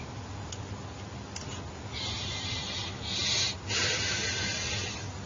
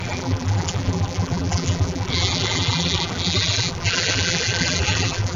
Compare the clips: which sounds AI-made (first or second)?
second